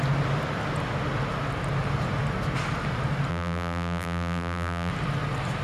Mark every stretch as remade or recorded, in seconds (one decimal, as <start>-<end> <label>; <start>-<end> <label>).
0.0-3.3 recorded; 3.3-4.9 remade; 4.9-5.6 recorded